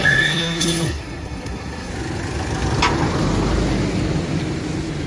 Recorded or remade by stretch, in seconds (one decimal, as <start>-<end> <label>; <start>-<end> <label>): 0.0-1.9 remade; 1.9-5.1 recorded